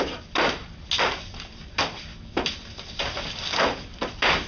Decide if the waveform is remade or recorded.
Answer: recorded